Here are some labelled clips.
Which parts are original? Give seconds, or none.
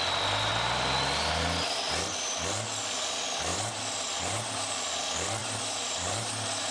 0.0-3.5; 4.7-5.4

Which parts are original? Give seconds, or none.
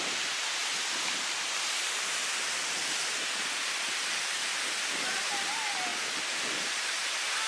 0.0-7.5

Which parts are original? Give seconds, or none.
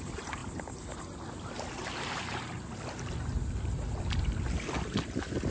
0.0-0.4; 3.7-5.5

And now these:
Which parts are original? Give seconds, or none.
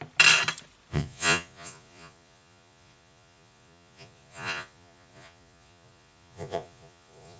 0.0-0.9